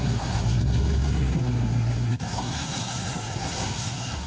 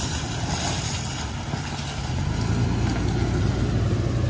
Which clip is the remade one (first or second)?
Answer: first